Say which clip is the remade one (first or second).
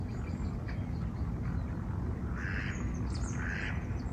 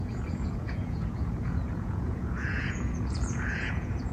second